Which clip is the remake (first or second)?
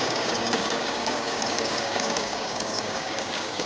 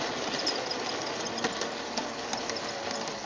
first